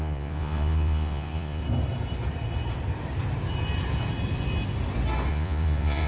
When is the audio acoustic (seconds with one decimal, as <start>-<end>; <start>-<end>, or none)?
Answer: 1.6-5.3